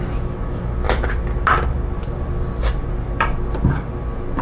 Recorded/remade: recorded